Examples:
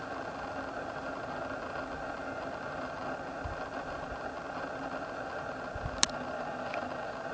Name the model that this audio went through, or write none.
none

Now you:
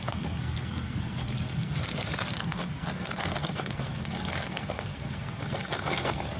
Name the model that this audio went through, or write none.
codec, SNAC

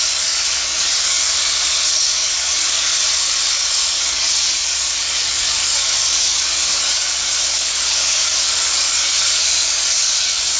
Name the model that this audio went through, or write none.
codec, DAC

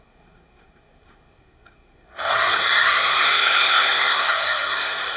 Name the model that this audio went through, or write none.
codec, SNAC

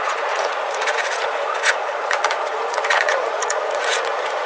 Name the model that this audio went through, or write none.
vocoder, Vocos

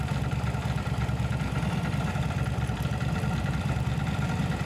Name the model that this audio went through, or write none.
none